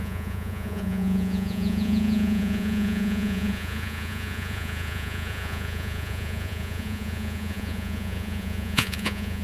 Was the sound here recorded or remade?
remade